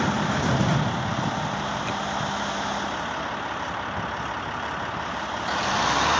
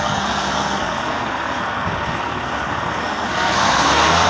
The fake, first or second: second